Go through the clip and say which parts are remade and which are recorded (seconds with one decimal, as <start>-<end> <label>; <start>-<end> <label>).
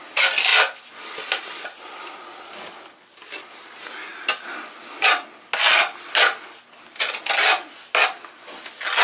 0.0-9.0 recorded